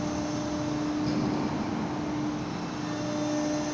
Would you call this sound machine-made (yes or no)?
no